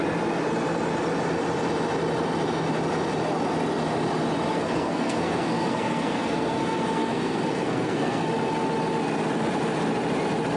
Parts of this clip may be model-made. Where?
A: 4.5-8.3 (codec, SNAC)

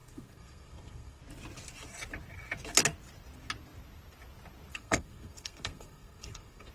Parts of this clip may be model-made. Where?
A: 0.0-1.2 (codec, SNAC); 4.7-6.7